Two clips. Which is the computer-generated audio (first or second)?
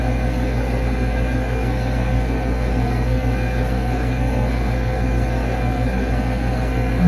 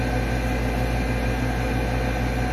first